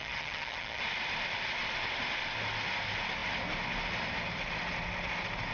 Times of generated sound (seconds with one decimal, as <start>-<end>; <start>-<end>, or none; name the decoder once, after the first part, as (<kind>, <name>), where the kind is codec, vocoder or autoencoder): 0.0-0.8 (vocoder, HiFi-GAN)